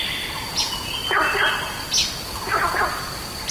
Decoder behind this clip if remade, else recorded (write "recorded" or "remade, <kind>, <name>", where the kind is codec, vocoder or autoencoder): recorded